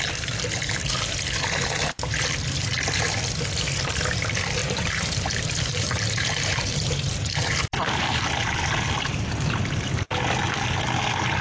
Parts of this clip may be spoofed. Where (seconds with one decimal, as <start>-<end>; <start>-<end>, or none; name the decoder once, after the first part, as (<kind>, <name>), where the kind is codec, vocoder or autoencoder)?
4.6-8.1 (vocoder, BigVGAN v2)